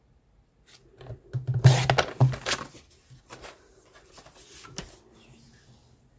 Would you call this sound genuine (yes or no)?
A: yes